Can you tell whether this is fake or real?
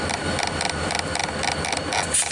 real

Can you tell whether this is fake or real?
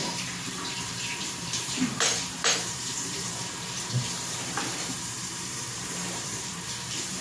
fake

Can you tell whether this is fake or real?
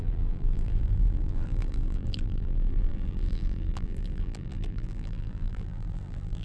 fake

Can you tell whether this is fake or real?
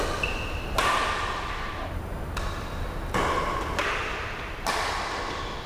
real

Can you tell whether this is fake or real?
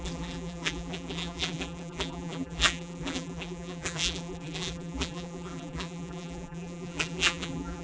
fake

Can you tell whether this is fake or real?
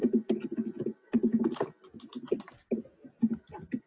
real